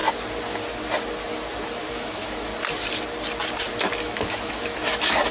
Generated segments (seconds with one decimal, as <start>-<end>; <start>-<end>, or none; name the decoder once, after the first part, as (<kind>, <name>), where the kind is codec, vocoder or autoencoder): 1.9-2.5 (autoencoder, DAC-VAE); 4.0-5.3